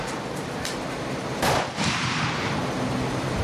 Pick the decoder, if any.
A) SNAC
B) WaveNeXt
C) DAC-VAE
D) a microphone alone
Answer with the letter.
D